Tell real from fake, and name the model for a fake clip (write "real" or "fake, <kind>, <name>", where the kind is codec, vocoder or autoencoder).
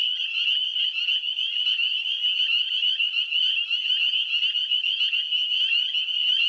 real